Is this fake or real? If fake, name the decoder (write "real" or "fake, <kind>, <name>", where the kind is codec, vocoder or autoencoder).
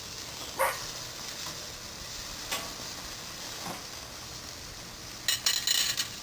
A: real